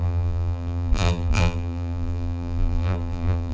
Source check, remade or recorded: remade